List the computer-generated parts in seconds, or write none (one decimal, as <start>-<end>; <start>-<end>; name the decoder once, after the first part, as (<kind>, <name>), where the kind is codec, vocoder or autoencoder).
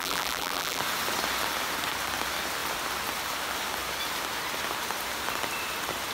0.0-0.8 (vocoder, BigVGAN v2)